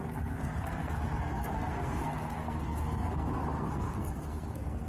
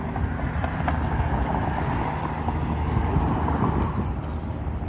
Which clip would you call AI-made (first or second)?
first